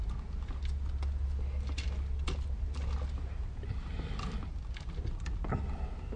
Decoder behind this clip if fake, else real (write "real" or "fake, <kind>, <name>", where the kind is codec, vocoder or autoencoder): real